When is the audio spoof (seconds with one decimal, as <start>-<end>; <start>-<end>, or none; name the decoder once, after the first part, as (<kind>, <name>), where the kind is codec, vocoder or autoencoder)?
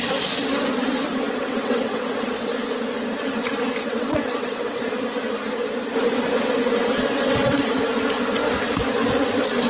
1.1-2.5 (vocoder, WaveNeXt); 3.8-4.8; 7.0-7.6